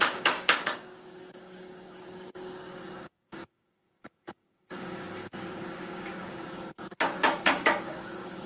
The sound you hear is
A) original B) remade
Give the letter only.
B